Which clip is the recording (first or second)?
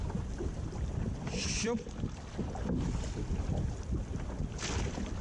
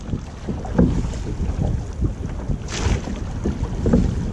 second